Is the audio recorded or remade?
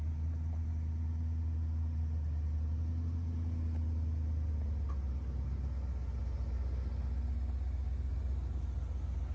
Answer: recorded